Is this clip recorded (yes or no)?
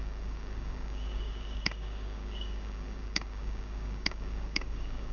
no